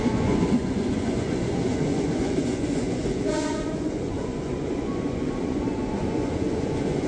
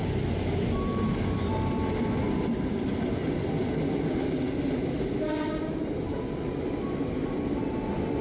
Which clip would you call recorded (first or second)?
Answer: second